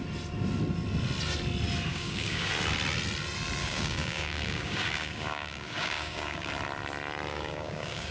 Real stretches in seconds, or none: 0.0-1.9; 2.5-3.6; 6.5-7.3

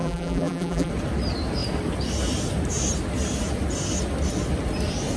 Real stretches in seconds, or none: 0.9-5.2